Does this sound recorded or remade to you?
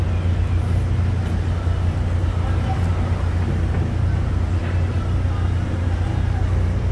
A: recorded